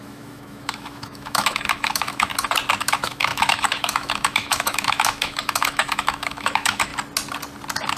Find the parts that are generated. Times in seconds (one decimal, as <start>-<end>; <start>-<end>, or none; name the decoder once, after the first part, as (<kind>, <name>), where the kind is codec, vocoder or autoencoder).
0.0-2.3 (autoencoder, DAC-VAE); 2.8-6.9